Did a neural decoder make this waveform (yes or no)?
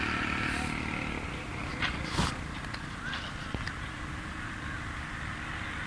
no